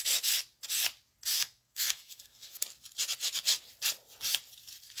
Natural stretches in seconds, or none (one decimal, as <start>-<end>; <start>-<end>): 0.0-1.3; 2.6-5.0